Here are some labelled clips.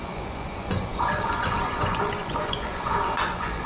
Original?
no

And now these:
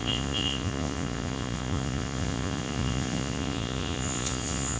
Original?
no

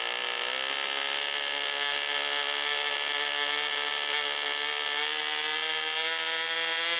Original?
yes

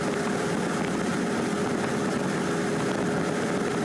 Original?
yes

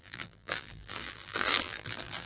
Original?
no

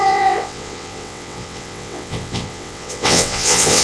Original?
no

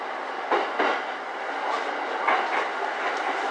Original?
yes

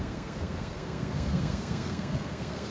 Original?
no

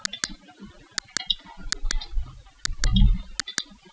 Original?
yes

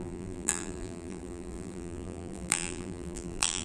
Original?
no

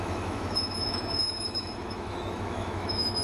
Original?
no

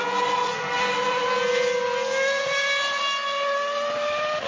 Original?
yes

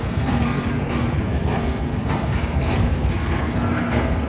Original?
no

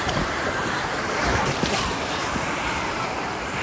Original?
no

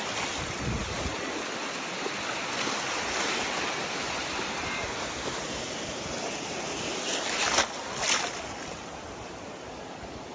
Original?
yes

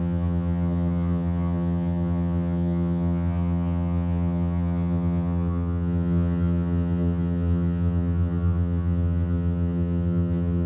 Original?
no